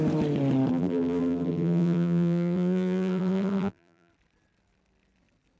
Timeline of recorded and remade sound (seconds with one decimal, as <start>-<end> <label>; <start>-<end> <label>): 0.0-0.7 recorded; 0.7-4.1 remade; 4.1-5.6 recorded